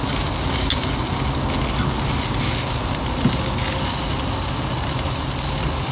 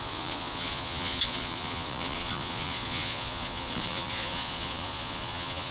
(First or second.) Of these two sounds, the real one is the first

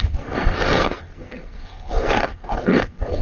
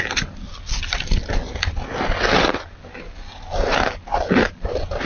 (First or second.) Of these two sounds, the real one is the second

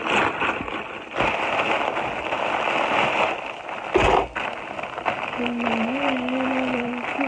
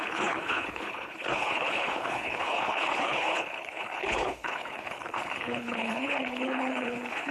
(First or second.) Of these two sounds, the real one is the first